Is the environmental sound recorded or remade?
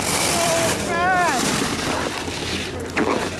recorded